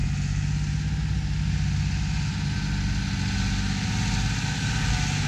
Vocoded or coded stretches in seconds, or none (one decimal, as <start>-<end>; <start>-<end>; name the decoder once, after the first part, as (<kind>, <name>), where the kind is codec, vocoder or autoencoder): none